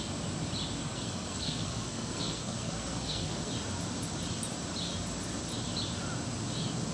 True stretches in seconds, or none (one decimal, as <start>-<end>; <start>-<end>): 0.0-0.8; 3.5-6.9